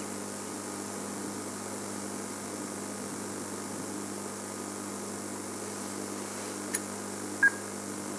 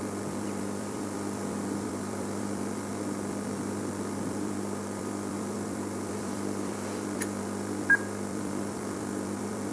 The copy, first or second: second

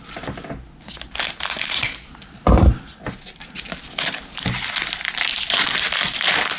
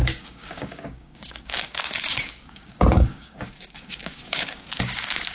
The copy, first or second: second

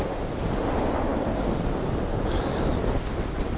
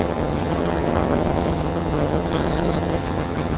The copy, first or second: second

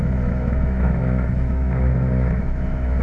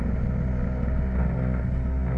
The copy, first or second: first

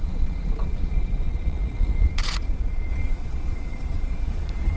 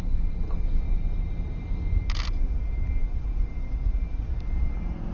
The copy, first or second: first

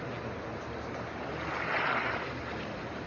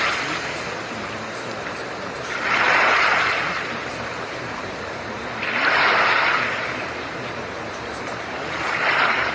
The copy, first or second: second